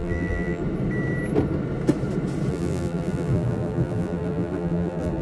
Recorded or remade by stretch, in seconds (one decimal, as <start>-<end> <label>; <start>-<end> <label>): 0.0-0.6 remade; 0.6-2.5 recorded; 2.5-5.2 remade